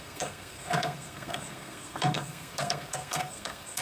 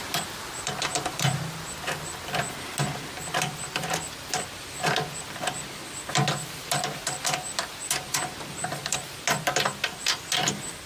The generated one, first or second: first